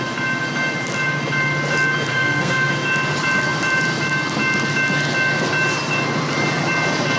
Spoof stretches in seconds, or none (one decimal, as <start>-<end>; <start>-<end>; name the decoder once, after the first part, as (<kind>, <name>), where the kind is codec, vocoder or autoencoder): 2.1-2.7 (codec, SNAC)

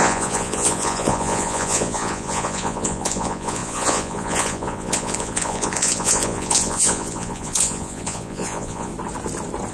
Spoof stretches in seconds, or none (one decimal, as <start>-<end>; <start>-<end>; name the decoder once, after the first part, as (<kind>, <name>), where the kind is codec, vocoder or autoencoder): 0.0-8.9 (vocoder, Vocos)

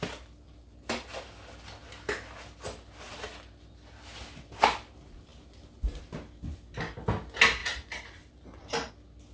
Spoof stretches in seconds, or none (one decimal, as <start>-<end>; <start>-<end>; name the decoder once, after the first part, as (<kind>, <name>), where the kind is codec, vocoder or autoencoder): 7.6-8.9 (vocoder, BigVGAN v2)

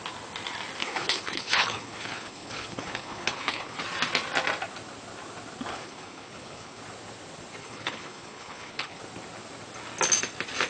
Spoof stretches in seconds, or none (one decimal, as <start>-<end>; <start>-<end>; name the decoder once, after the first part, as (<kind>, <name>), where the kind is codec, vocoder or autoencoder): 0.8-3.8 (codec, HILCodec); 5.7-6.8; 7.6-9.0